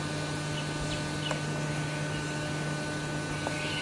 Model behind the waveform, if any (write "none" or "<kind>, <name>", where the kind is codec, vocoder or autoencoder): none